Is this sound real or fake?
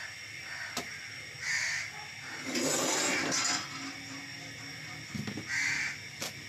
real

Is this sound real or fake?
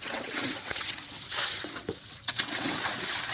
fake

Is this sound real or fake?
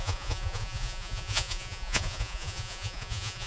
fake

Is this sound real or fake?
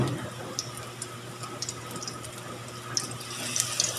real